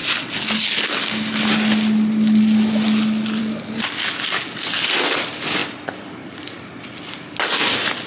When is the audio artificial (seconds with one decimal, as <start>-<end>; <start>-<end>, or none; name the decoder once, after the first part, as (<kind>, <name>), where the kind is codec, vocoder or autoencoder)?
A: none